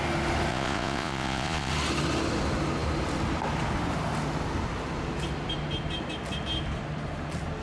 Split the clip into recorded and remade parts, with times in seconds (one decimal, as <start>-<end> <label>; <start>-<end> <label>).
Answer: 0.0-0.5 recorded; 0.5-1.7 remade; 1.7-7.6 recorded